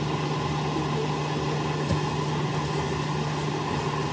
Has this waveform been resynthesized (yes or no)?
no